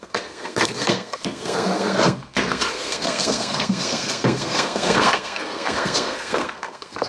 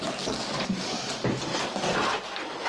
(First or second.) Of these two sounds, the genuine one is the second